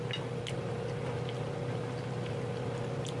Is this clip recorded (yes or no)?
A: yes